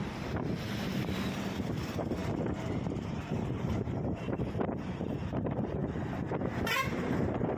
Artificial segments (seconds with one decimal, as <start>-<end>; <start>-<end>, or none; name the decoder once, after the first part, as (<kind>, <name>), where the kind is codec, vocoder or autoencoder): 0.0-5.8 (vocoder, BigVGAN v2); 6.7-7.6